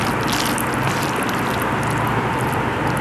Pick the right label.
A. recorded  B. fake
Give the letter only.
A